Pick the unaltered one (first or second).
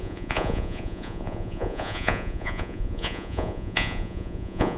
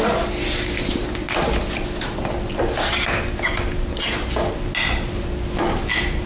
second